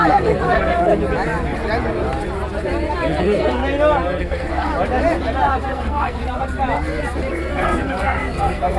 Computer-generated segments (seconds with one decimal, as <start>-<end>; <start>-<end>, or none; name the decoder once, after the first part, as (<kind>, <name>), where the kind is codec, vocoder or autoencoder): 0.0-0.9 (codec, SNAC); 3.2-3.6; 4.2-4.7; 5.5-6.2; 7.3-8.8